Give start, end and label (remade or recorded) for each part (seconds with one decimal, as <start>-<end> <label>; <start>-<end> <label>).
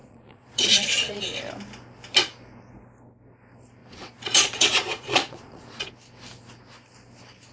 0.0-1.2 remade; 1.2-3.8 recorded; 3.8-5.9 remade; 5.9-7.5 recorded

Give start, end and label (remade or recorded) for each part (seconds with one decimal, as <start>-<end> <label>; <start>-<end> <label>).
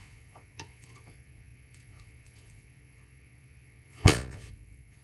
0.0-5.0 remade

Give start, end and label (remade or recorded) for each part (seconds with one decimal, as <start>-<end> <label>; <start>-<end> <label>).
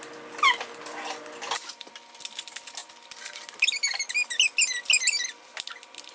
0.0-6.1 recorded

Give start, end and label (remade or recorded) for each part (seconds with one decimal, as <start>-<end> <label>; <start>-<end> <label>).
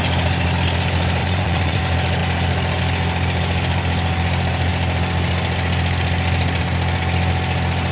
0.0-1.2 recorded; 1.2-1.8 remade; 1.8-7.9 recorded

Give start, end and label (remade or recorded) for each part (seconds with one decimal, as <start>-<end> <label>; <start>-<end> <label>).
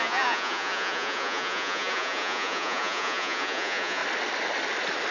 0.0-4.0 remade; 4.0-5.1 recorded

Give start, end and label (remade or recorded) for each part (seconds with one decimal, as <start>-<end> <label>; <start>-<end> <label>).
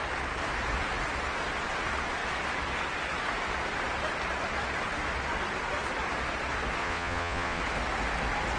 0.0-6.8 recorded; 6.8-7.6 remade; 7.6-8.6 recorded